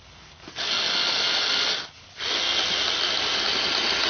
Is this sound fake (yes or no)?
no